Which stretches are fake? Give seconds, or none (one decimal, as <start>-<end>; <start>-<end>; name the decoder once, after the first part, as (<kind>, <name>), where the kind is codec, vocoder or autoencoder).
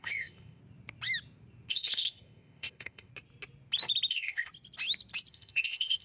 0.0-0.6 (codec, ZipCodec); 1.7-3.1; 4.1-4.5; 5.3-6.0